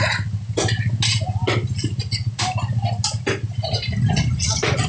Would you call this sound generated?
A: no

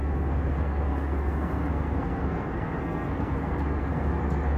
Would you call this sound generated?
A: yes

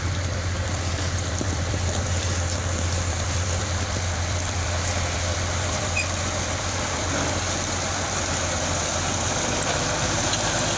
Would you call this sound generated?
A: yes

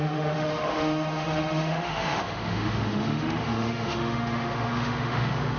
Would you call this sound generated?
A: yes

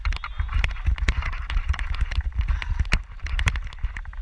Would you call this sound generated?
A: no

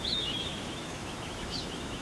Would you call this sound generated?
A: yes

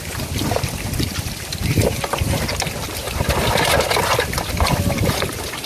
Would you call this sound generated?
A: no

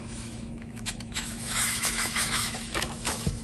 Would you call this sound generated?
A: yes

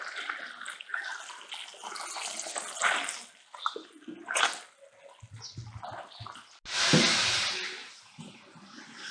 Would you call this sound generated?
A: no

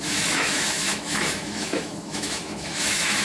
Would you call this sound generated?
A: yes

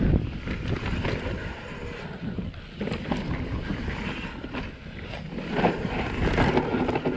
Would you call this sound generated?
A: no